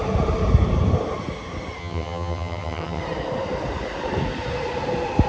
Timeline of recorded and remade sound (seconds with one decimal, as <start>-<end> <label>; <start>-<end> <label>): 0.0-1.8 recorded; 1.8-3.0 remade; 3.0-5.3 recorded